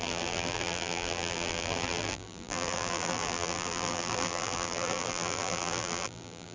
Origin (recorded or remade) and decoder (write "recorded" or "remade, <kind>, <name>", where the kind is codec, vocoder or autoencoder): remade, vocoder, BigVGAN v2